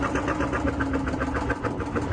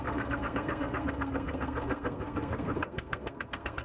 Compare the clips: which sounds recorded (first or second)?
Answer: first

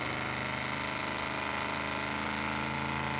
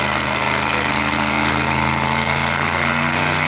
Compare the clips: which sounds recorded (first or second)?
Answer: first